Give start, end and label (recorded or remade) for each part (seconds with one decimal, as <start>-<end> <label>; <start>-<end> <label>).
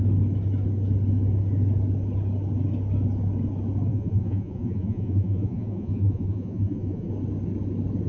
0.0-3.9 recorded; 3.9-7.1 remade; 7.1-8.1 recorded